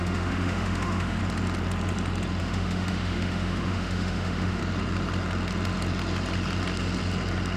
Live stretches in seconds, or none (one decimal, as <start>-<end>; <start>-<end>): 1.2-2.4; 4.6-7.6